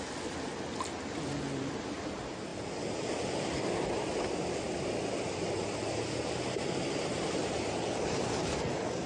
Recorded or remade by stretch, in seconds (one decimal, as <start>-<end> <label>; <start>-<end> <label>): 0.0-9.1 recorded